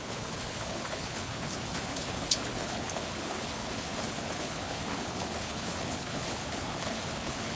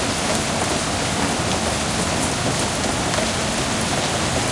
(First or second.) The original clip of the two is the second